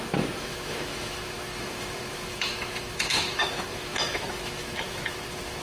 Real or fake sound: fake